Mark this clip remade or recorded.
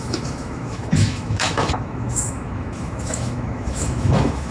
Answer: remade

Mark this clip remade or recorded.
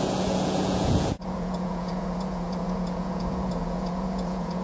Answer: remade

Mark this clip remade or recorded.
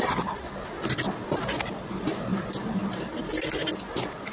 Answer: recorded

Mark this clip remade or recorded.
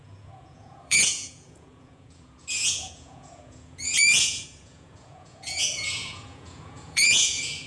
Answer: remade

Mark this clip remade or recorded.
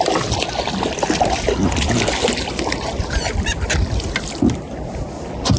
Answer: recorded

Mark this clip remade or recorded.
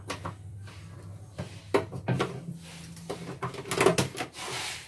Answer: recorded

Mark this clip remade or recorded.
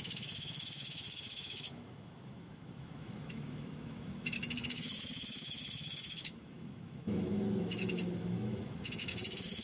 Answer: remade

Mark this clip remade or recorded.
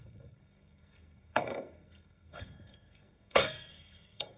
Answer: remade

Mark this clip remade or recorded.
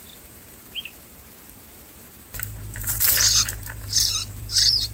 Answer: remade